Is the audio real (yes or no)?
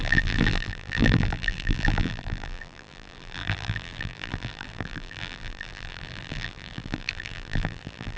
no